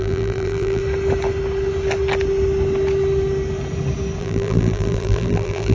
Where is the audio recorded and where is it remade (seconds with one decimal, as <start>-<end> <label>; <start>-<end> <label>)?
0.0-0.8 remade; 0.8-4.2 recorded; 4.2-5.7 remade